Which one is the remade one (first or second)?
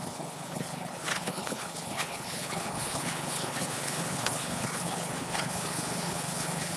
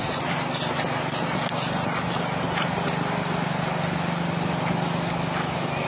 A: first